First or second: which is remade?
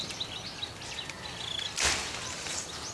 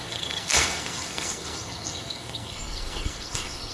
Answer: second